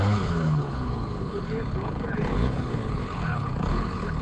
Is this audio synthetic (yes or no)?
yes